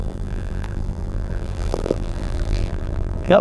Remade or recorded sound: remade